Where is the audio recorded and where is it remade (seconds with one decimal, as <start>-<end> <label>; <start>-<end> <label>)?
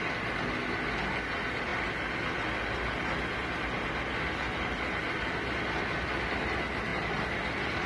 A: 0.0-7.9 recorded